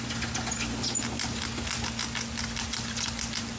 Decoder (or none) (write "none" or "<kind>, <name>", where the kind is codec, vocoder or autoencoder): none